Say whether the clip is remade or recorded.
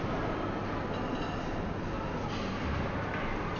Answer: recorded